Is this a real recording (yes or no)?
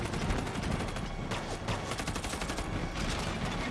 yes